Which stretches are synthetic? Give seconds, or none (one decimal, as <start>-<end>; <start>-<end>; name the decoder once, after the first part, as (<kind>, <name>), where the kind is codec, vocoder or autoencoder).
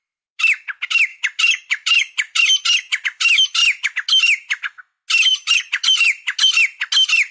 1.1-2.4 (vocoder, BigVGAN v2); 5.3-6.6